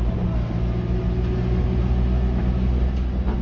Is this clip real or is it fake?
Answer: real